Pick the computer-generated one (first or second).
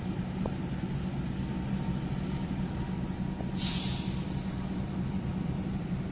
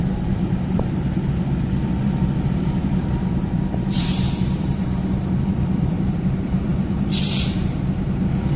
second